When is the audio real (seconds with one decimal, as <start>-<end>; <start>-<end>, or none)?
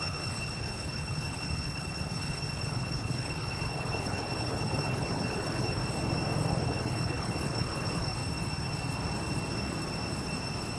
5.8-6.5; 8.2-10.8